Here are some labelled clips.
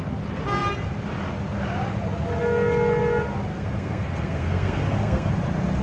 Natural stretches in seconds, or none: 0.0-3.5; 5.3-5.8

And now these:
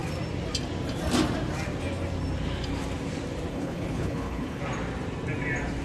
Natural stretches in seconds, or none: 0.0-3.5; 4.6-5.8

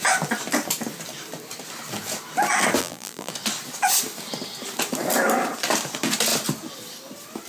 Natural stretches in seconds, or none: 0.0-2.8; 3.3-7.5

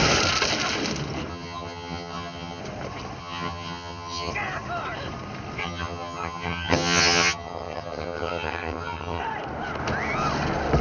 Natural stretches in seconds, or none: 0.0-1.3; 2.6-3.2; 4.3-5.6; 9.2-10.8

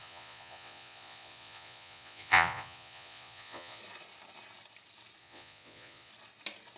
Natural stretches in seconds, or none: 3.8-5.2; 6.1-6.8

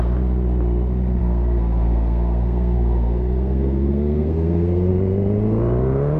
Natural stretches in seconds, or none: 0.0-1.2; 4.9-6.2